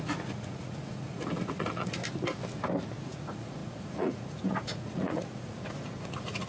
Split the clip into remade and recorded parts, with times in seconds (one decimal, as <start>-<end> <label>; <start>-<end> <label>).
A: 0.0-2.0 remade; 2.0-3.0 recorded; 3.0-6.5 remade